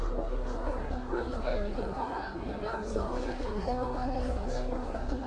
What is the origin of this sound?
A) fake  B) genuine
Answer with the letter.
A